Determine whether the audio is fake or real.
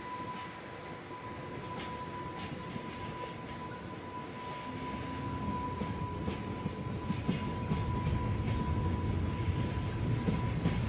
real